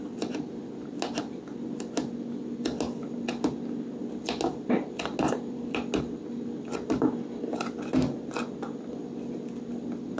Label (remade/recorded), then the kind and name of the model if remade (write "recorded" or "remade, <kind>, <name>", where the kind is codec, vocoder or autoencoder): recorded